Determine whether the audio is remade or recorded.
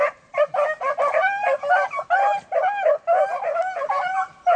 recorded